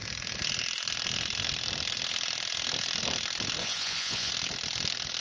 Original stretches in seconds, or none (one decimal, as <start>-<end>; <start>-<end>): 0.0-3.6; 4.3-5.2